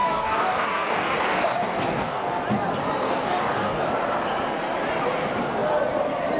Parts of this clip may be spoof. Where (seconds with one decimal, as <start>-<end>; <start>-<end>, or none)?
0.0-2.3; 3.0-3.9